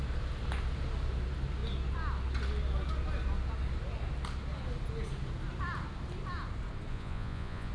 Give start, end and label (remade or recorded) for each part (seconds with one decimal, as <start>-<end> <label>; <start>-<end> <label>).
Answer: 0.0-6.9 recorded; 6.9-7.7 remade